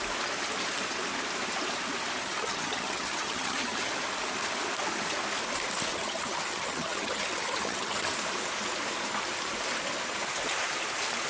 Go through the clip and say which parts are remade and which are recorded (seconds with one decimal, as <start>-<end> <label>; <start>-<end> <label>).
0.0-2.2 recorded; 2.2-3.9 remade; 3.9-5.9 recorded; 5.9-8.0 remade; 8.0-11.3 recorded